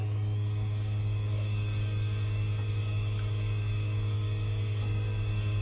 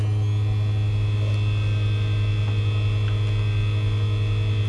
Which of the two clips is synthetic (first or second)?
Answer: first